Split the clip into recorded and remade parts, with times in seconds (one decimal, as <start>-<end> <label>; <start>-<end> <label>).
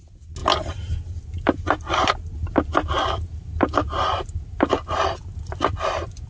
0.0-6.3 recorded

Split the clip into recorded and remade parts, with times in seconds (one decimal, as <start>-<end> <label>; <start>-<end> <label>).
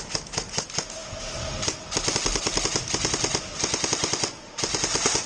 0.0-5.3 recorded